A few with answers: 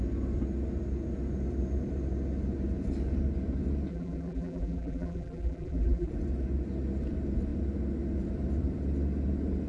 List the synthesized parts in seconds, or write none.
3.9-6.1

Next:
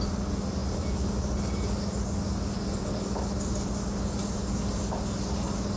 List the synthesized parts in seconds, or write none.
none

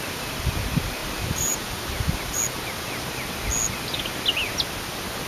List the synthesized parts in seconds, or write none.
1.0-2.4